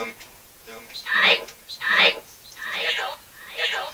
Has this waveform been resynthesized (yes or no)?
yes